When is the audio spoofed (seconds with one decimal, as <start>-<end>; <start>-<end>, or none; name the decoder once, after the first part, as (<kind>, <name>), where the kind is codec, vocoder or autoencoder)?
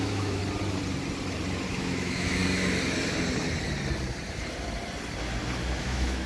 0.0-0.4 (autoencoder, DAC-VAE); 1.7-2.4; 5.8-6.3